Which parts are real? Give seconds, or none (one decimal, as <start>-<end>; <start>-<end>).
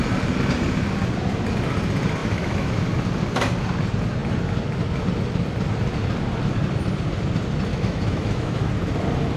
0.0-2.2; 2.8-7.7; 8.7-9.4